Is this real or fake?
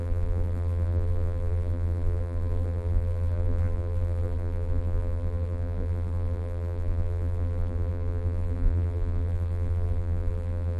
fake